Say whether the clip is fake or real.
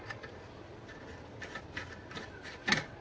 real